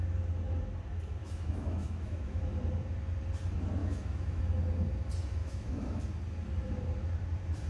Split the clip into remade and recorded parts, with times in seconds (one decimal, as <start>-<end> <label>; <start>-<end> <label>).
0.0-1.2 recorded; 1.2-2.4 remade; 2.4-3.8 recorded; 3.8-4.4 remade; 4.4-5.4 recorded; 5.4-6.0 remade; 6.0-7.7 recorded